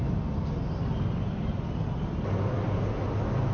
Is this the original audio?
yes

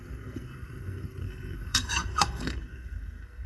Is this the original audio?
no